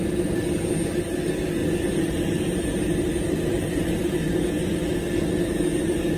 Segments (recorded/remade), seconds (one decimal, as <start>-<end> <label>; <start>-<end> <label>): 0.0-6.2 recorded